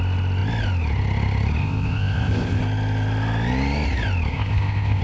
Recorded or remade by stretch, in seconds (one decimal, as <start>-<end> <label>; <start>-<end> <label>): 0.0-1.6 recorded; 1.6-2.6 remade; 2.6-4.3 recorded; 4.3-5.0 remade